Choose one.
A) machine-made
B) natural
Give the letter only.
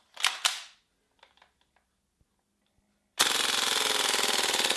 B